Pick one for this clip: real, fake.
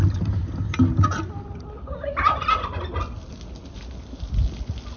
real